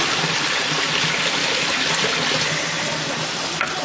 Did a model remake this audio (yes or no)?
no